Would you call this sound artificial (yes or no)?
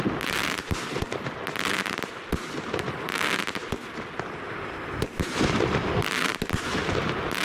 no